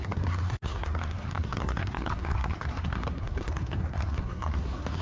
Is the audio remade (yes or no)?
yes